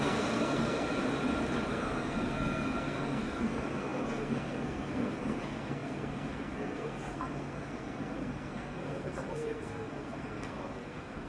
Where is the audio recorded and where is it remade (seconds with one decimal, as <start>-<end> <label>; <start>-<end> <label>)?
0.0-1.0 remade; 1.0-1.7 recorded; 1.7-11.3 remade